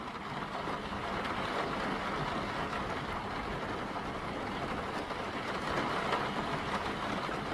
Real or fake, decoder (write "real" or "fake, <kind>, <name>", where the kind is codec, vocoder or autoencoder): real